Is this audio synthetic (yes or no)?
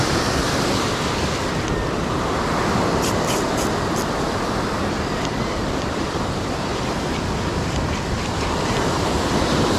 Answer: yes